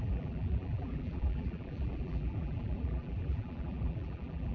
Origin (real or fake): fake